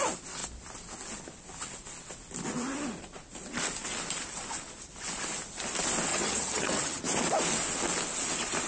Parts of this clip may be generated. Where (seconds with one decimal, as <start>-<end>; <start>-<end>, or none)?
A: 6.1-7.0